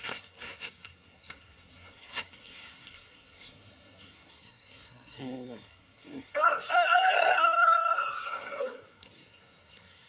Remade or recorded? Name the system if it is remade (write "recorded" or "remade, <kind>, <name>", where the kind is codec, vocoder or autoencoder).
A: remade, codec, SNAC